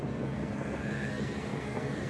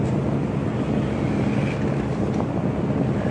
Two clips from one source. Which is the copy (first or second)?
first